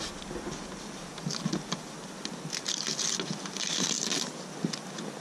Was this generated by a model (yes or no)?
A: no